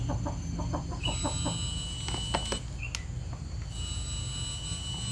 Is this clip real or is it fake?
real